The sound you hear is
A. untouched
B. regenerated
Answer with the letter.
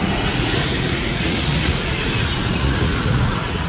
B